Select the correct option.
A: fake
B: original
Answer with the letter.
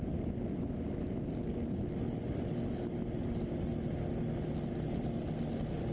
B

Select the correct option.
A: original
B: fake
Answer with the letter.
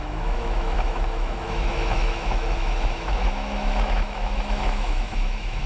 B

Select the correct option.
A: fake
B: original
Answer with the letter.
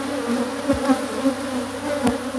B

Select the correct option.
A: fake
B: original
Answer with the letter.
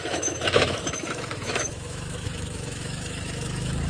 A